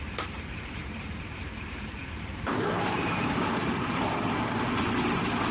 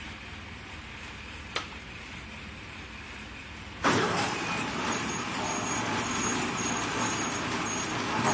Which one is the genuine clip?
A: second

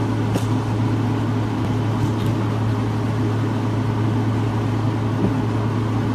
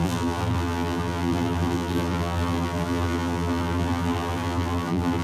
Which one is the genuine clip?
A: first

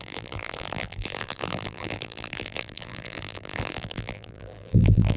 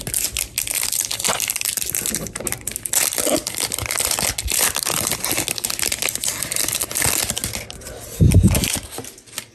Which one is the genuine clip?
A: second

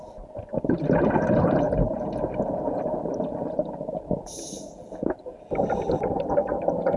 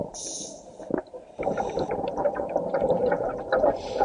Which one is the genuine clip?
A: first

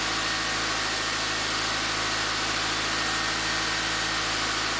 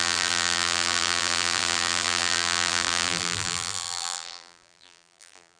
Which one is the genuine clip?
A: first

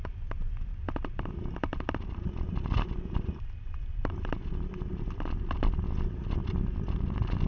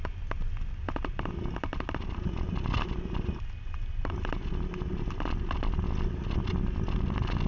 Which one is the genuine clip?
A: second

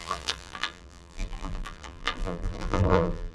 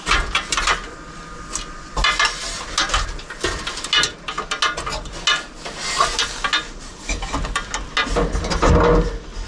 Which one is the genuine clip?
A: second